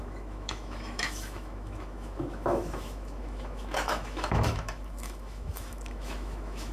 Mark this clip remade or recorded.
remade